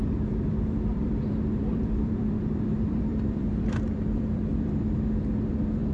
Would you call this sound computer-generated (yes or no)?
yes